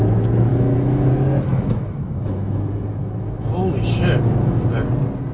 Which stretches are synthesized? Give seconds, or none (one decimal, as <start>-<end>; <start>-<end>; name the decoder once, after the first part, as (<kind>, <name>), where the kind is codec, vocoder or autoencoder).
0.5-1.1 (autoencoder, DAC-VAE); 1.5-4.7